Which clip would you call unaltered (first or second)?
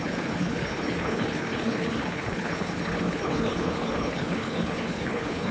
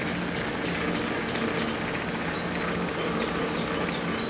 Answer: second